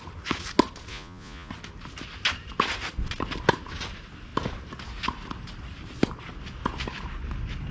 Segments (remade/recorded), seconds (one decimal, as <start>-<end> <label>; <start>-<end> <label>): 0.0-0.9 recorded; 0.9-1.5 remade; 1.5-7.7 recorded